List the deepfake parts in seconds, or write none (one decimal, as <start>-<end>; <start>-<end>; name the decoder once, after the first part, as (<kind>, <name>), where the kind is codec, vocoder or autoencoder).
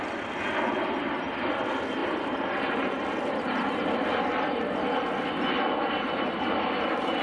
none